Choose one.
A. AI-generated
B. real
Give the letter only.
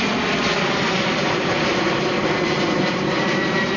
B